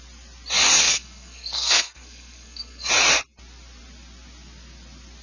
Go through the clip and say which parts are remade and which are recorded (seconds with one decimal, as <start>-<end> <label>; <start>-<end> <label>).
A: 0.0-0.8 recorded; 0.8-2.9 remade; 2.9-5.2 recorded